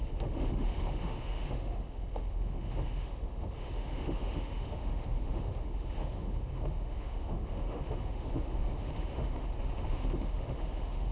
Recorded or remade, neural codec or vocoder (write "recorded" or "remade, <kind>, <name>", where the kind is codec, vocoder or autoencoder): remade, autoencoder, DAC-VAE